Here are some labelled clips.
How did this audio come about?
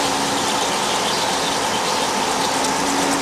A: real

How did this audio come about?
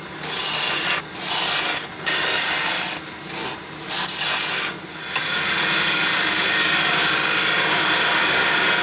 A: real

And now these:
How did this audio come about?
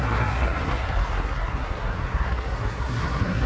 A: fake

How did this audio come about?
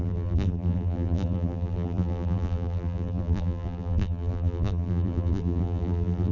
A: fake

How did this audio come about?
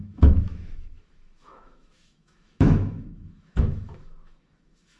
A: fake